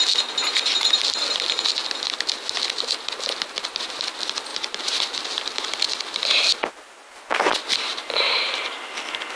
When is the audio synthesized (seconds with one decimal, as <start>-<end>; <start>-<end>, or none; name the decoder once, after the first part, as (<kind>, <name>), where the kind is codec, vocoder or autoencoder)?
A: 4.5-6.7 (vocoder, BigVGAN v2); 7.9-8.7